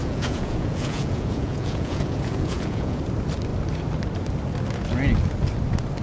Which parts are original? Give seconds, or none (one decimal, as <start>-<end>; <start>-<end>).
3.0-6.0

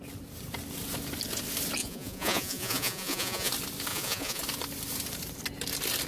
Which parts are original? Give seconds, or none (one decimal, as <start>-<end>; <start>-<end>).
0.0-1.8; 3.5-3.9; 4.4-6.1

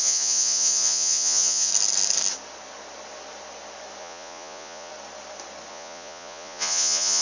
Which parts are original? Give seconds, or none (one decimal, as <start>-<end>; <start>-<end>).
1.7-4.0; 4.9-5.7

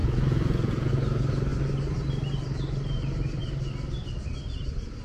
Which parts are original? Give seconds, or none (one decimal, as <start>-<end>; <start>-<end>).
0.9-5.0

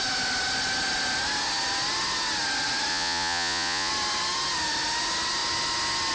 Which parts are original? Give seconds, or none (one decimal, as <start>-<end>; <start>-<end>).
0.0-2.9; 3.9-6.1

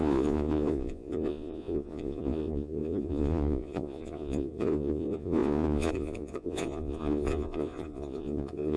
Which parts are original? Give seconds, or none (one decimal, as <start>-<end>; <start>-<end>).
none

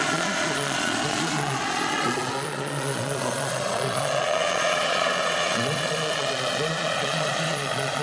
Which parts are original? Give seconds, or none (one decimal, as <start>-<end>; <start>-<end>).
none